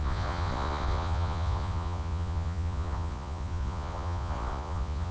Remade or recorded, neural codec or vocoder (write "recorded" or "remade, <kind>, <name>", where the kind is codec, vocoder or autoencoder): remade, vocoder, Vocos